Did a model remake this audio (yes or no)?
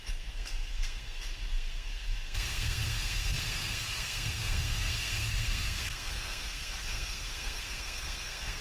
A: yes